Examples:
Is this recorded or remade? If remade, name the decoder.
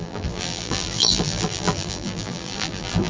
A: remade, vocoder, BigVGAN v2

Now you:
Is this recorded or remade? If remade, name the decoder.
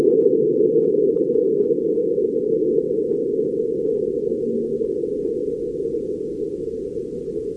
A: recorded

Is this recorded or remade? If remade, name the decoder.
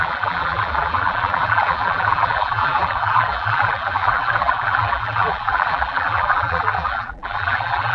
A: remade, vocoder, BigVGAN v2